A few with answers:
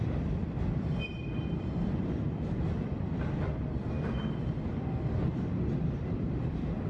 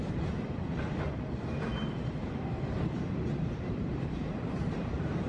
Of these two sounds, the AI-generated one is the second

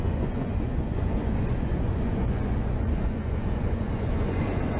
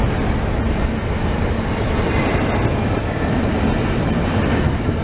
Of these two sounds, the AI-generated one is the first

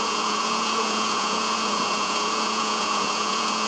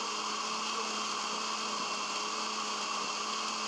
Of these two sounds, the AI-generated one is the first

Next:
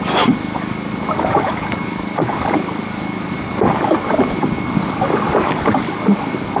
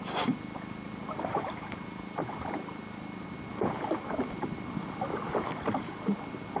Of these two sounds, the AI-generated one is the first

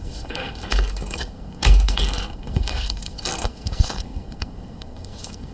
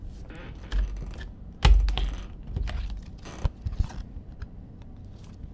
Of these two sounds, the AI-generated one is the first